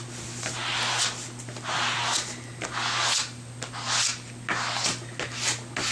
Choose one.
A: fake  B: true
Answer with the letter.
B